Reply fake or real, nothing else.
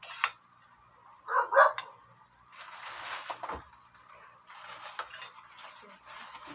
real